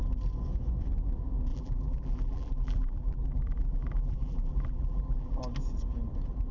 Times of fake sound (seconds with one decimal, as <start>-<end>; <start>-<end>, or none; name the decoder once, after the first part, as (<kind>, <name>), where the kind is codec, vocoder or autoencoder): 1.5-5.4 (vocoder, BigVGAN v2)

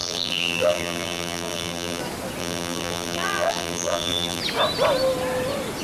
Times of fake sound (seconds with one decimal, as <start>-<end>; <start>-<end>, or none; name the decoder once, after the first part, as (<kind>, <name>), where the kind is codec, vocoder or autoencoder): 0.0-2.0 (vocoder, BigVGAN v2); 2.4-4.4